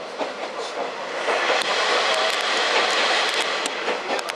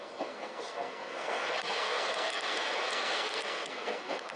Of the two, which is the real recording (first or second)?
first